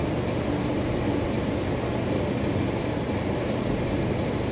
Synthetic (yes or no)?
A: no